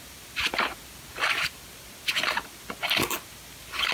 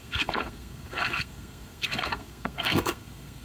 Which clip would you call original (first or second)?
first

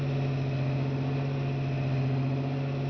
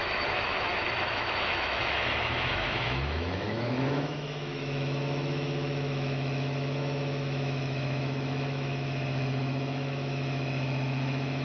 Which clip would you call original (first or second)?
first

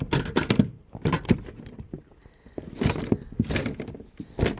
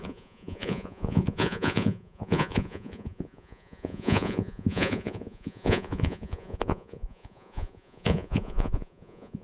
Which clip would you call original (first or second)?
first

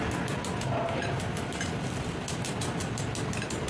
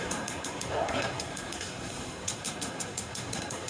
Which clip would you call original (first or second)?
first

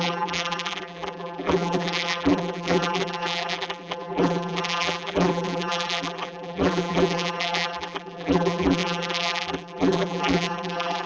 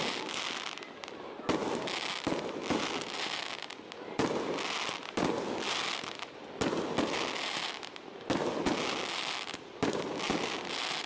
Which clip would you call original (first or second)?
second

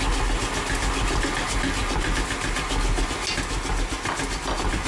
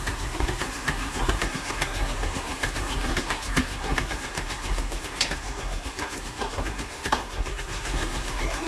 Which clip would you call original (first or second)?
first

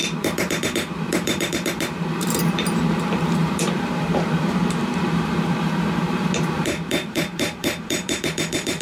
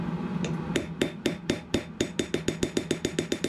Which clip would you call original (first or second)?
second